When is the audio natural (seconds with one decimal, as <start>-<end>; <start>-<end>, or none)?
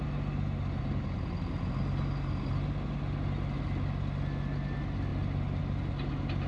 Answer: 0.0-6.5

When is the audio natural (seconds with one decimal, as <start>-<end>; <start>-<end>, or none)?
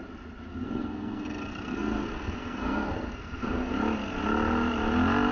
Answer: 0.0-0.5; 3.7-5.3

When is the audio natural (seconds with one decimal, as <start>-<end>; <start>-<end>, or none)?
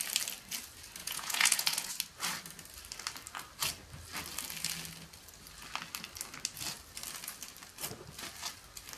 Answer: 0.0-1.0; 1.9-9.0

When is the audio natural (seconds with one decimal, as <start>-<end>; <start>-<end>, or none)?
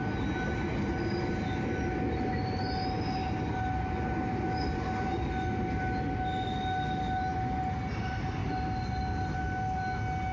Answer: 0.0-10.3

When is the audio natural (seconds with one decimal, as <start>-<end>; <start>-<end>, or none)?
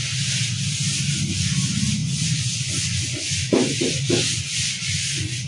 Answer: 0.0-2.0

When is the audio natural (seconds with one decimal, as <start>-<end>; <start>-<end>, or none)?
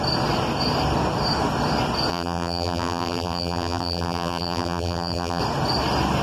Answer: 0.0-2.1; 5.4-6.2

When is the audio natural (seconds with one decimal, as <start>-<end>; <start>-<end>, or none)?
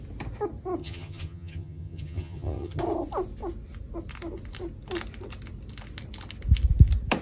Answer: 0.0-0.8; 2.8-7.2